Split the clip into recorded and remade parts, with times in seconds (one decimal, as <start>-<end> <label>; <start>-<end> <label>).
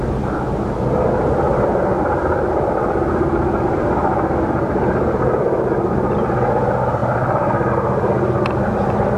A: 0.0-1.9 recorded; 1.9-3.6 remade; 3.6-4.0 recorded; 4.0-5.5 remade; 5.5-7.0 recorded; 7.0-7.7 remade; 7.7-9.2 recorded